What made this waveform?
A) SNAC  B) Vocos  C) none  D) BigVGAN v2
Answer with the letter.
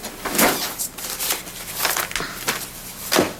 C